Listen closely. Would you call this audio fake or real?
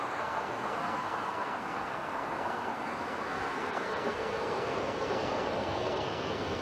fake